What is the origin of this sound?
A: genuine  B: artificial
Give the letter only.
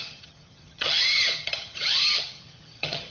B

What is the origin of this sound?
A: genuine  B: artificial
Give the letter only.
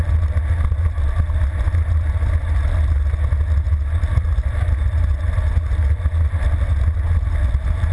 A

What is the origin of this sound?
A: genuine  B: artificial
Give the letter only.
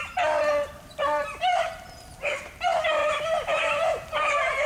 B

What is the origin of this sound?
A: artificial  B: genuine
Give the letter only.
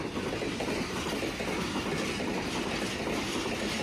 B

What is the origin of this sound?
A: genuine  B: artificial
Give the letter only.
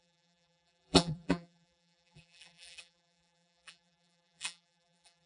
B